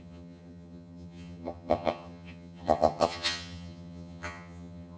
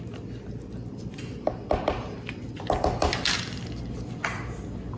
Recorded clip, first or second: second